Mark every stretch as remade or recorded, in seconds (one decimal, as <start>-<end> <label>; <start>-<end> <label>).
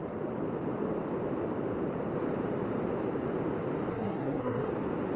0.0-3.9 recorded; 3.9-4.7 remade; 4.7-5.2 recorded